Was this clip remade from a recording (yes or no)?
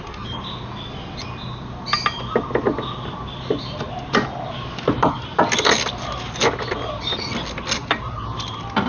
no